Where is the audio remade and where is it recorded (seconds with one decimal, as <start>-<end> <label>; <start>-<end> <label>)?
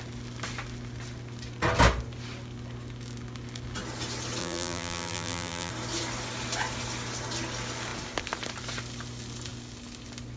0.0-4.4 recorded; 4.4-5.7 remade; 5.7-10.4 recorded